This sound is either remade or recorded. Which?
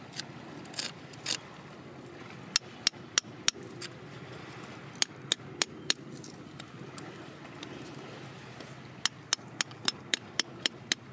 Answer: recorded